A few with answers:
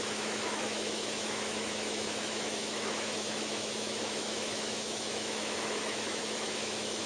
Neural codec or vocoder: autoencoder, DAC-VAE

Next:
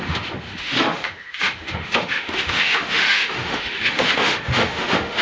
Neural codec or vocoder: autoencoder, DAC-VAE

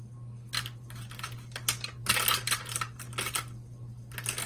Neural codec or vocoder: none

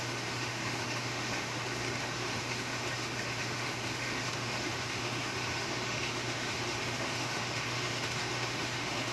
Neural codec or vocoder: autoencoder, DAC-VAE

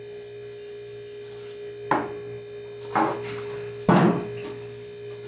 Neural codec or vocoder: none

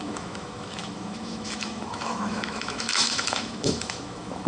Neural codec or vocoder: autoencoder, DAC-VAE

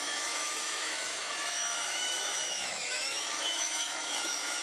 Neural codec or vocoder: autoencoder, DAC-VAE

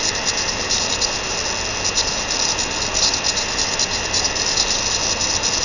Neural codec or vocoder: none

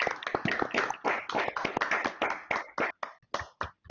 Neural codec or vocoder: none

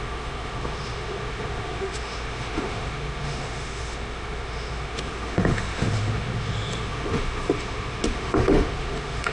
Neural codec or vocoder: autoencoder, DAC-VAE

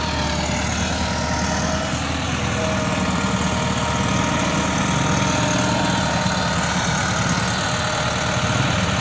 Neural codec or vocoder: none